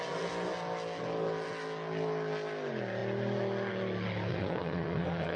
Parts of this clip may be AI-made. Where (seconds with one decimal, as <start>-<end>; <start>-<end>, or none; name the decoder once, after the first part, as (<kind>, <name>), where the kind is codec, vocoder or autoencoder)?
4.3-5.4 (vocoder, WaveNeXt)